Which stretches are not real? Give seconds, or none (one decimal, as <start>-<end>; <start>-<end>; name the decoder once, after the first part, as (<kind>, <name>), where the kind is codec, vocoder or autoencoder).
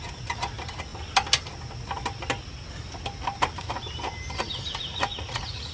4.9-5.7 (vocoder, Vocos)